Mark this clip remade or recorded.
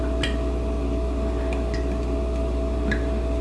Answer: recorded